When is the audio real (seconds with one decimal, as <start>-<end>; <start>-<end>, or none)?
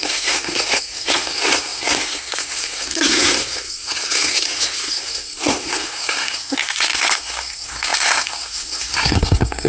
none